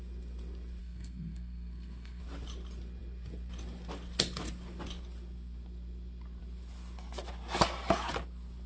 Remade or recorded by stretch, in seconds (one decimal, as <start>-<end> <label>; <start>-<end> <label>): 0.0-0.8 recorded; 0.8-2.2 remade; 2.2-8.7 recorded